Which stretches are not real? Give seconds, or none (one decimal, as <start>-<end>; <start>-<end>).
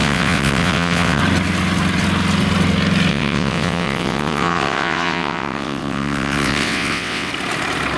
0.0-1.2; 3.1-7.3